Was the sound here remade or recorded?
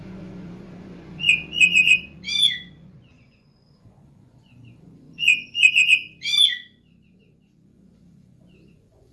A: remade